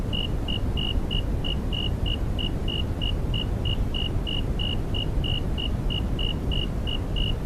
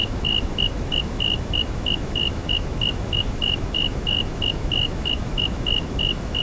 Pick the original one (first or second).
first